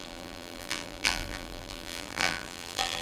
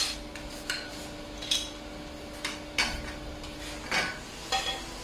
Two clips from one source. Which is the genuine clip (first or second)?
second